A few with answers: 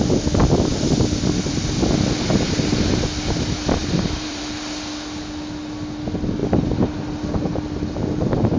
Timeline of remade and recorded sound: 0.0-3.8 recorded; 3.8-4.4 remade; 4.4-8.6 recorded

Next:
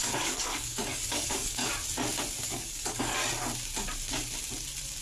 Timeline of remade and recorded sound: 0.0-1.6 remade; 1.6-2.4 recorded; 2.4-3.2 remade; 3.2-5.0 recorded

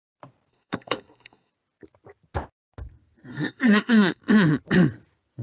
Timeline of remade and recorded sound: 0.0-0.5 recorded; 0.5-1.5 remade; 1.5-3.3 recorded; 3.3-4.2 remade; 4.2-5.4 recorded

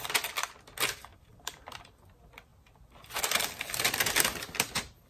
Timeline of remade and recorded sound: 0.0-1.1 recorded; 1.1-1.8 remade; 1.8-2.5 recorded; 2.5-3.2 remade; 3.2-5.1 recorded